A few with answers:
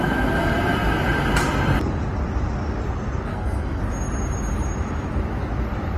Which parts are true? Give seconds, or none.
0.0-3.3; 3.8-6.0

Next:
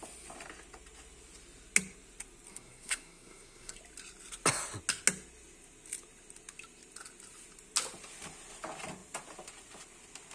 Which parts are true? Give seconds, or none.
0.0-2.5; 3.8-10.3

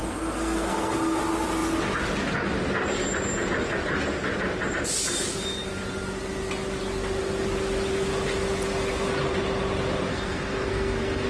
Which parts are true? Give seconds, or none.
1.2-10.1

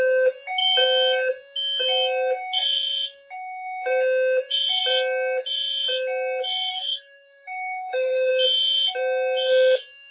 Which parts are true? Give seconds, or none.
0.0-6.7; 8.3-10.1

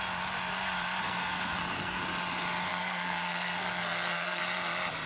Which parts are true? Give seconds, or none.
0.0-1.0; 2.0-2.7; 4.4-5.1